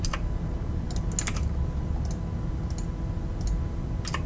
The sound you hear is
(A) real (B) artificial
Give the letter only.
A